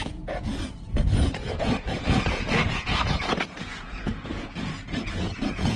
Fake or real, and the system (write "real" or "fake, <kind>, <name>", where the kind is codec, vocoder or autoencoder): fake, vocoder, Vocos